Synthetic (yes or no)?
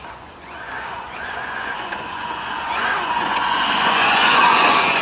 yes